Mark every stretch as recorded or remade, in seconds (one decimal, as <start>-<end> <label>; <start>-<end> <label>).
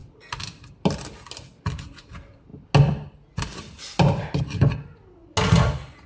0.0-6.1 recorded